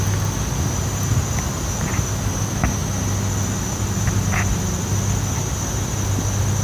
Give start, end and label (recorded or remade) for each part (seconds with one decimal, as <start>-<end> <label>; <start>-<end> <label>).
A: 0.0-6.6 recorded